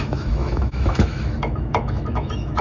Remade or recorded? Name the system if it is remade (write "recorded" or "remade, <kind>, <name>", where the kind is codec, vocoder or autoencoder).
remade, autoencoder, DAC-VAE